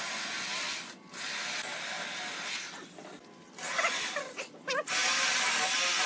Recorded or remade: recorded